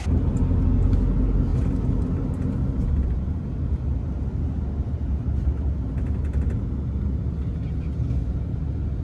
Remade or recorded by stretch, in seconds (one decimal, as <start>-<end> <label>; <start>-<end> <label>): 0.0-9.0 recorded